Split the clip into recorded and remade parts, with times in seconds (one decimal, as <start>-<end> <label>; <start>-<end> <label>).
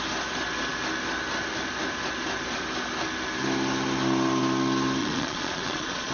0.0-5.0 recorded; 5.0-6.1 remade